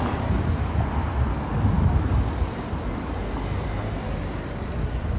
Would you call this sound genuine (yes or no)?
yes